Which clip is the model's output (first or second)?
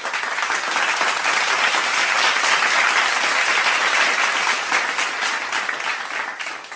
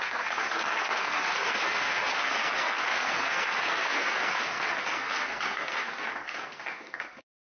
second